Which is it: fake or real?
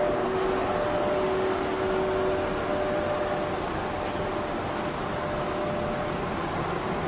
real